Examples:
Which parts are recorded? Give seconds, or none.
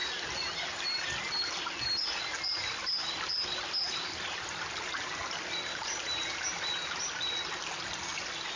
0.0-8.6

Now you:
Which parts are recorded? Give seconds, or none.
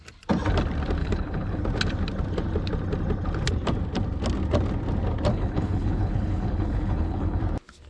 0.0-1.0; 1.6-5.3; 7.4-7.9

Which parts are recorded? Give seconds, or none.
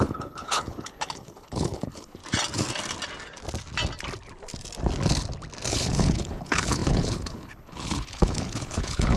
2.2-5.7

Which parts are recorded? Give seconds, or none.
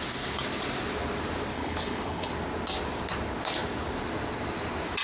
0.0-1.5; 2.3-5.0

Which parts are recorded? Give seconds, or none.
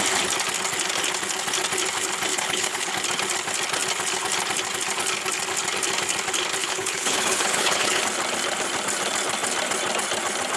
0.0-2.3; 2.9-6.6; 8.0-10.6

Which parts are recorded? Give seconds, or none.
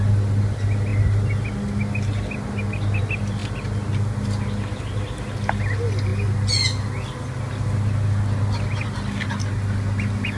0.0-10.4